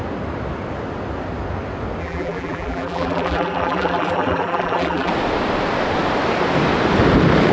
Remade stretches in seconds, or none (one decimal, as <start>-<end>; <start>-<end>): 2.0-5.1